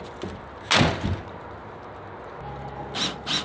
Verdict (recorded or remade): recorded